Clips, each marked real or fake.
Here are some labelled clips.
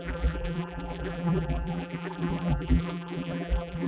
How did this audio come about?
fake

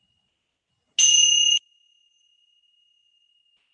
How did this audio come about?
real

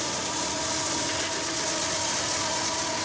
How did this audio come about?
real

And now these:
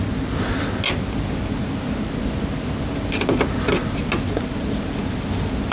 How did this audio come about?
real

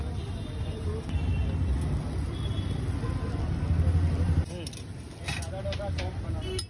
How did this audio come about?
real